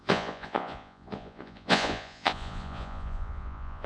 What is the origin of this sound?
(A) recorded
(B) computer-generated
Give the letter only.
B